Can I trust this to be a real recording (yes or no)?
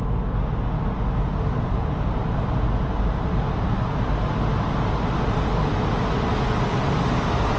yes